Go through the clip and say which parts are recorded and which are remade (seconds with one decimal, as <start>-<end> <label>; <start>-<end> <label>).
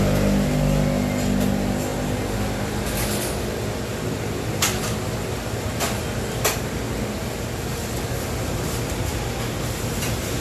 0.0-10.4 recorded